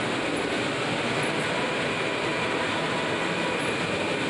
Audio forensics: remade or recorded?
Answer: recorded